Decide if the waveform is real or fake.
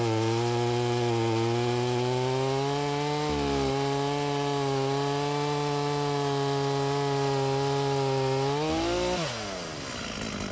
real